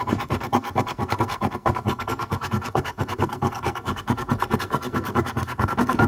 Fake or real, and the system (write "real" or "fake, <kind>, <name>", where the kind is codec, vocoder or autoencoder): fake, codec, SNAC